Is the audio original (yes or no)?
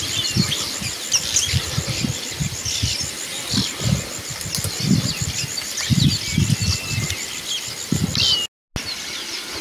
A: yes